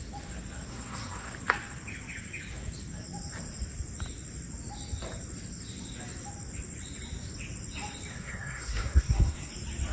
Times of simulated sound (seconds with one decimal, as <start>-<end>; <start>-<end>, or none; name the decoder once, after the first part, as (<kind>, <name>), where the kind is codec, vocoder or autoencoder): 0.7-1.3 (codec, SNAC); 8.1-9.5